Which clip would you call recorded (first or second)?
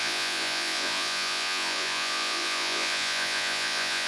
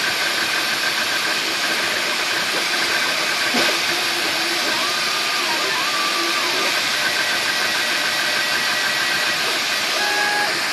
second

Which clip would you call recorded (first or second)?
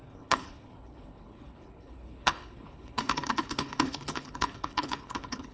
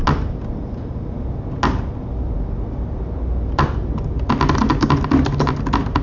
second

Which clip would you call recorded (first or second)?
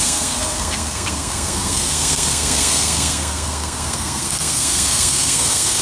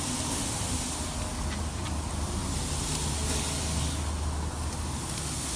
second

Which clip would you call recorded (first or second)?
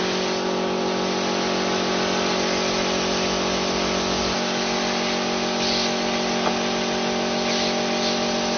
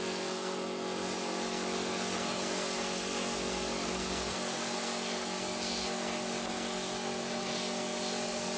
first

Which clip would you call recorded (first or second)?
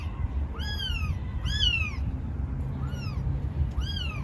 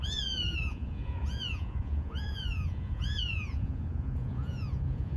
first